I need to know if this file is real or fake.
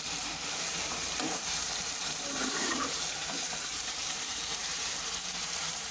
fake